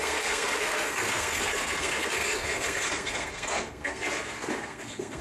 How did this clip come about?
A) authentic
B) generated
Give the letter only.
B